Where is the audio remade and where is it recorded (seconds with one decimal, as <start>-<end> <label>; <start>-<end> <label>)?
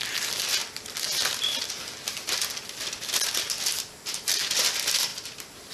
0.0-5.1 recorded; 5.1-5.7 remade